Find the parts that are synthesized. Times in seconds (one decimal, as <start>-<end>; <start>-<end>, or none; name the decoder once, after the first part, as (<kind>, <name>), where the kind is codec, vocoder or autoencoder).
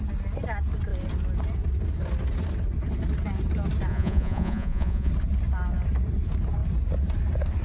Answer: 3.9-5.1 (vocoder, Vocos)